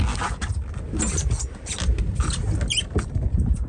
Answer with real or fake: real